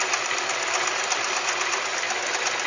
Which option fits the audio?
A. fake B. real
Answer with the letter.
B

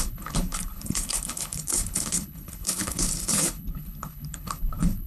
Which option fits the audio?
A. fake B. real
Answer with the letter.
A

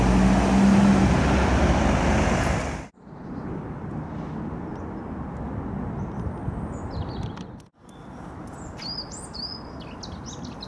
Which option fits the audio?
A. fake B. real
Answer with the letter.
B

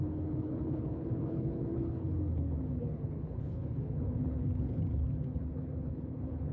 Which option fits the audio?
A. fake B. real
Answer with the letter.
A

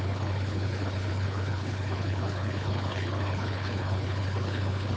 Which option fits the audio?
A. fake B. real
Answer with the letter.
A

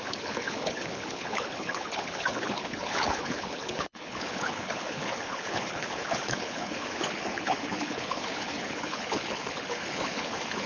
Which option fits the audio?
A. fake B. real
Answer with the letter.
A